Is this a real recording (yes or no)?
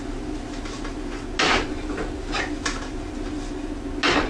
yes